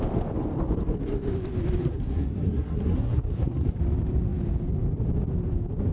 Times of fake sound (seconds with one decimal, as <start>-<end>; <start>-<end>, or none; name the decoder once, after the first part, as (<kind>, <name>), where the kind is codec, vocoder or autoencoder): 1.8-3.8 (codec, SNAC)